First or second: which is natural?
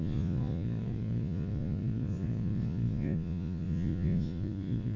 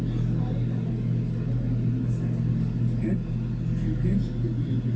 second